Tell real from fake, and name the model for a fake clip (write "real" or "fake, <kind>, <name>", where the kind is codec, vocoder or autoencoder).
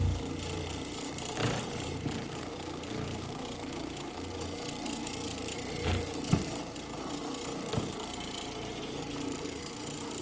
fake, vocoder, BigVGAN v2